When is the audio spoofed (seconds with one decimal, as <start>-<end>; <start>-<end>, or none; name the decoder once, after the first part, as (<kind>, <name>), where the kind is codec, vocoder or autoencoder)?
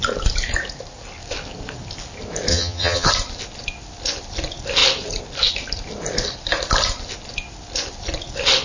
2.5-3.1 (vocoder, HiFi-GAN)